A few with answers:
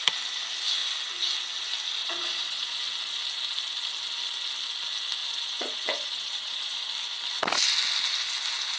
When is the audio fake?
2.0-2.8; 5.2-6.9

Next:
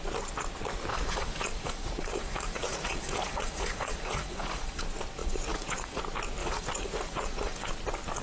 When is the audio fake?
0.9-4.8; 5.2-6.0; 6.4-7.7

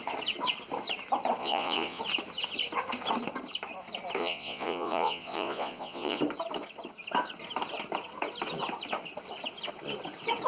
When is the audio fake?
1.4-2.0; 4.2-6.2